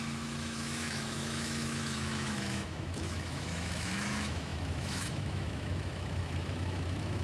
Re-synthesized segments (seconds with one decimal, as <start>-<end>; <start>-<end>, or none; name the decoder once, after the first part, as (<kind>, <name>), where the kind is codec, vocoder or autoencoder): 0.0-7.2 (autoencoder, DAC-VAE)